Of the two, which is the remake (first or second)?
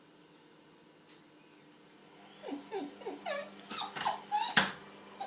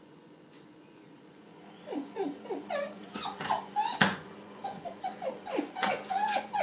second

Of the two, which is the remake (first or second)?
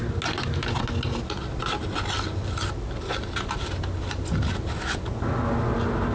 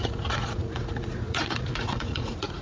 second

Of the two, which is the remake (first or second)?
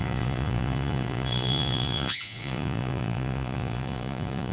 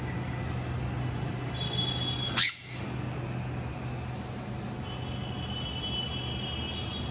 first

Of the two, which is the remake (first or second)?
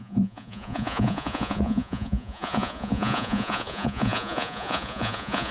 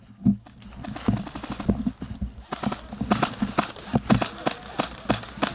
first